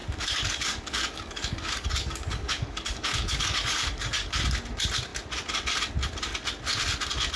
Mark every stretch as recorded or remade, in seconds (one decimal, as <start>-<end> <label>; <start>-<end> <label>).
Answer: 0.0-4.4 remade; 4.4-7.4 recorded